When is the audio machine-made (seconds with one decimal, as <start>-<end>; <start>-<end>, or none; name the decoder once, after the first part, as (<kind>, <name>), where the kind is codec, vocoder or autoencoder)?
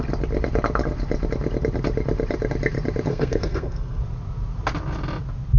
3.1-4.0 (codec, SNAC)